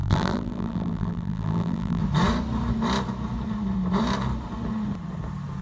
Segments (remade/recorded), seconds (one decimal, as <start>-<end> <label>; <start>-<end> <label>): 0.0-2.0 remade; 2.0-5.6 recorded